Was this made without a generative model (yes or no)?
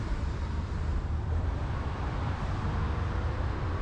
no